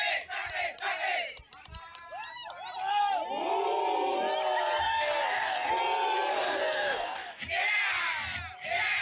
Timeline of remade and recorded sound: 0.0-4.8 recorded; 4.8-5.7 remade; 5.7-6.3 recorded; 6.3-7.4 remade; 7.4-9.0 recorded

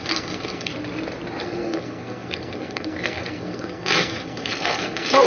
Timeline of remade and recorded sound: 0.0-0.7 remade; 0.7-1.4 recorded; 1.4-5.3 remade